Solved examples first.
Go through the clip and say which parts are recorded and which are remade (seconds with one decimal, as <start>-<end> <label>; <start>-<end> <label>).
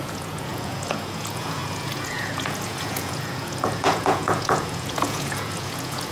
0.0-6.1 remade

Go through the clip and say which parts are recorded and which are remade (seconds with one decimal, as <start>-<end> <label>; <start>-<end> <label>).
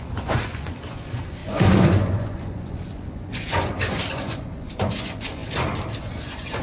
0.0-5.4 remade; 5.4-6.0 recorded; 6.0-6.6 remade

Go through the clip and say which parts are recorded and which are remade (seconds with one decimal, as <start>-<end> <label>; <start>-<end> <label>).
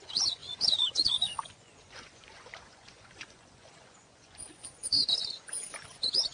0.0-6.3 remade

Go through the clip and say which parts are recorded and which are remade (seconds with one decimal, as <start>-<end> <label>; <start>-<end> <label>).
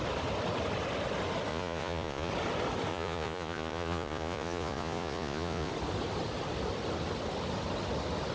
0.0-1.5 recorded; 1.5-2.3 remade; 2.3-2.9 recorded; 2.9-5.7 remade; 5.7-8.3 recorded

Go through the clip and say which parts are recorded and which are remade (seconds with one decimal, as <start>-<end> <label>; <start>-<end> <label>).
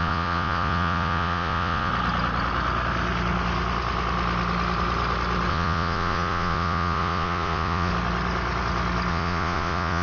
0.0-1.9 remade; 1.9-5.5 recorded; 5.5-7.9 remade; 7.9-9.1 recorded; 9.1-10.0 remade